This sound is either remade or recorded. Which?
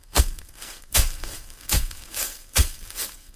remade